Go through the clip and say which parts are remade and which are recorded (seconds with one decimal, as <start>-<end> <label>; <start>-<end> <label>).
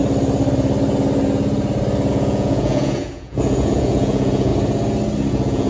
0.0-2.1 recorded; 2.1-4.5 remade; 4.5-5.3 recorded; 5.3-5.7 remade